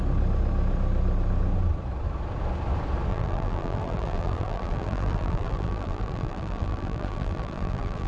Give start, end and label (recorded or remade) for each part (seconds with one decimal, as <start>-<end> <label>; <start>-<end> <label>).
0.0-3.1 recorded; 3.1-8.1 remade